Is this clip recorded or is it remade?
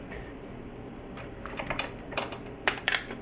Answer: remade